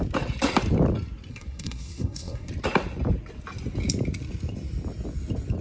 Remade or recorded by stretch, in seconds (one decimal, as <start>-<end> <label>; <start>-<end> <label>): 0.0-1.3 recorded; 1.3-2.5 remade; 2.5-5.6 recorded